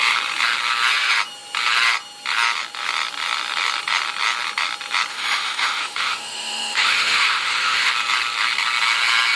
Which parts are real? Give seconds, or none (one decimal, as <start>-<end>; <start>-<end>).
0.0-5.1; 7.9-9.4